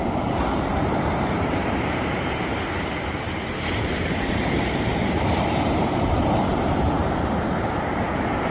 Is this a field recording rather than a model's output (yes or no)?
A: no